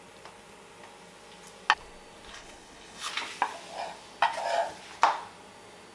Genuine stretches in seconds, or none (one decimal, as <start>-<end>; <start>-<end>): 0.0-2.3; 3.1-5.9